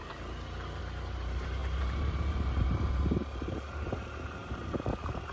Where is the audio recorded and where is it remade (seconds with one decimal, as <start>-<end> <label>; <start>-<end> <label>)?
0.0-0.8 recorded; 0.8-5.3 remade